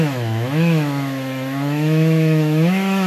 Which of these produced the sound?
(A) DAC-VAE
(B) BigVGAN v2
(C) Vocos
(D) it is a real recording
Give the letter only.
A